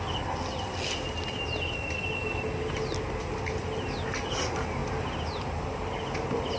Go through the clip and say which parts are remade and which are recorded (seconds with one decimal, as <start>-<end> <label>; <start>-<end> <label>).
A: 0.0-6.6 recorded